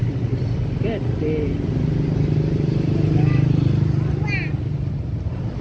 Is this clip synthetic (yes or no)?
no